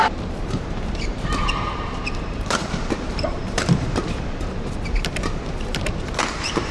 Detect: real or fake fake